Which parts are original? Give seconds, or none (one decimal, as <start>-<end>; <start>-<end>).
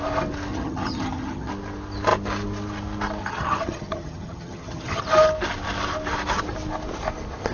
0.0-0.5; 1.5-3.2; 5.0-7.5